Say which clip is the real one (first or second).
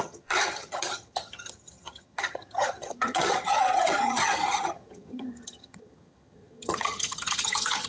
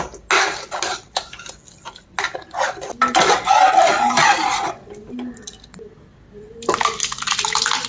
second